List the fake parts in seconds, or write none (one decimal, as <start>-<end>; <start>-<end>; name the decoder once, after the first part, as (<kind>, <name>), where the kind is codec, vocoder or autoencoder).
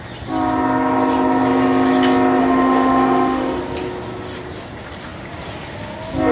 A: 2.4-3.6 (autoencoder, DAC-VAE)